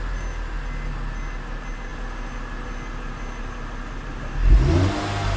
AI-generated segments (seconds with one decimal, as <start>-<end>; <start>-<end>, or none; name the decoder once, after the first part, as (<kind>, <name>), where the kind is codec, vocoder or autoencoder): none